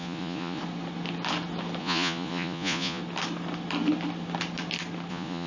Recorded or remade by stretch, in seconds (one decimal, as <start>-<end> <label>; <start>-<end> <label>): 0.0-0.6 remade; 0.6-1.8 recorded; 1.8-3.0 remade; 3.0-5.1 recorded; 5.1-5.5 remade